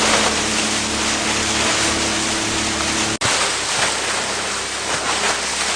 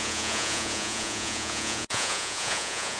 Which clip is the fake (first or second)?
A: second